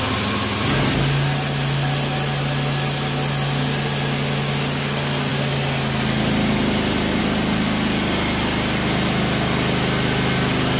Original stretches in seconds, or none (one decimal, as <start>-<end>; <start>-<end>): 0.0-10.8